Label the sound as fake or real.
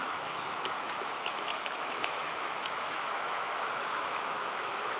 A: fake